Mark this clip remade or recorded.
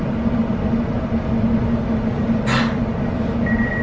recorded